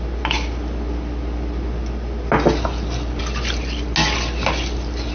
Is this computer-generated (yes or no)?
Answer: no